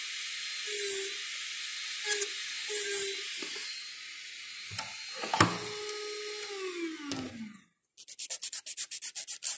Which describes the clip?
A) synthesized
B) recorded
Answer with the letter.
B